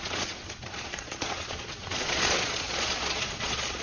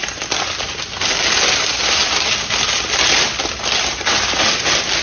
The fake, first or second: first